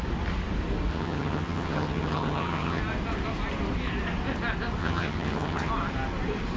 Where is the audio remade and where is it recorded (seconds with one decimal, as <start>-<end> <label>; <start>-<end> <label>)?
0.0-0.9 recorded; 0.9-2.8 remade; 2.8-4.8 recorded; 4.8-5.7 remade; 5.7-6.6 recorded